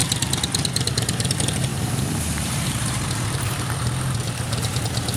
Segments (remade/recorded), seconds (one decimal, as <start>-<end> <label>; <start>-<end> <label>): 0.0-1.7 recorded; 1.7-4.8 remade; 4.8-5.2 recorded